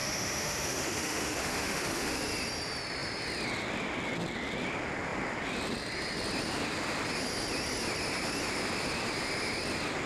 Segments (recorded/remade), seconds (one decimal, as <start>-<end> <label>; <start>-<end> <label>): 0.0-2.2 remade; 2.2-10.1 recorded